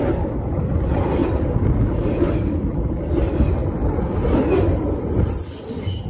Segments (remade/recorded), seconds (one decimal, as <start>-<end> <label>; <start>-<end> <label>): 0.0-6.1 recorded